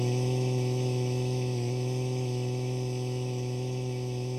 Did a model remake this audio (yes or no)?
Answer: yes